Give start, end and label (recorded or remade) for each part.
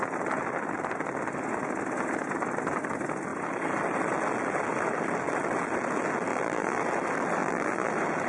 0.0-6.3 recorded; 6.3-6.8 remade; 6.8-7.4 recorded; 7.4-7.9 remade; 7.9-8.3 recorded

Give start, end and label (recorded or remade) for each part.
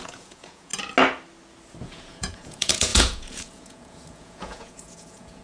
0.0-0.7 remade; 0.7-1.8 recorded; 1.8-5.4 remade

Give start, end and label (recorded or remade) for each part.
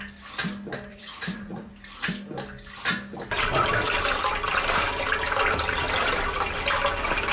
0.0-0.9 recorded; 0.9-1.7 remade; 1.7-7.3 recorded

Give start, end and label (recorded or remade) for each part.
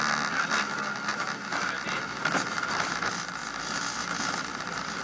0.0-5.0 recorded